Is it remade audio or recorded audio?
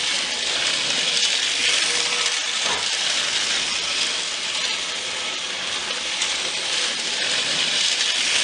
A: remade